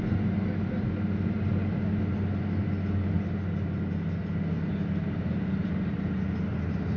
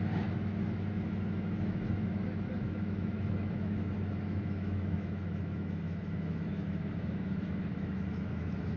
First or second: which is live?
first